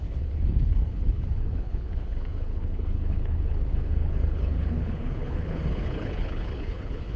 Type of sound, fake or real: fake